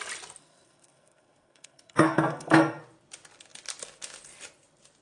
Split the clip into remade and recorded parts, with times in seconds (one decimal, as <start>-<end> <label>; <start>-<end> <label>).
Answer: 0.0-0.4 recorded; 0.4-2.8 remade; 2.8-5.0 recorded